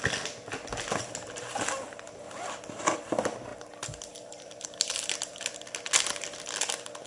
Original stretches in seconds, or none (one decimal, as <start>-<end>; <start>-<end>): 0.0-3.5; 5.4-7.1